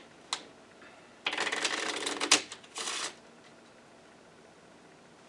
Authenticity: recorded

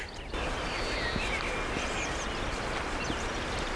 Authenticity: recorded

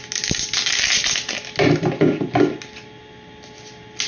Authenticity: recorded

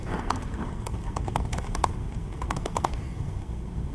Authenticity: remade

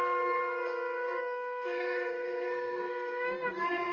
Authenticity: remade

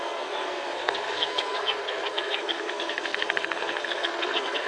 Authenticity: remade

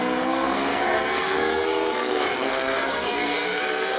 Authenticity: remade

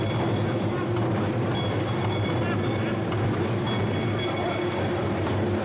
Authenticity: recorded